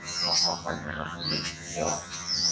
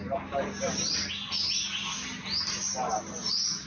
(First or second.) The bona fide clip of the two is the second